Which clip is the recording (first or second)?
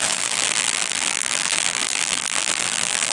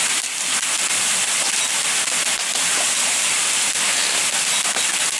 second